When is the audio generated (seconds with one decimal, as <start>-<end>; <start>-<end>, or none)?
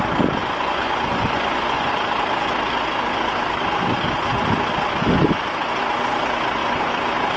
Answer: 0.4-1.9